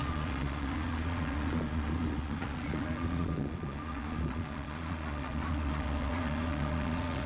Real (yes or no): no